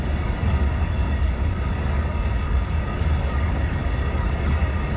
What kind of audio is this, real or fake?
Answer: fake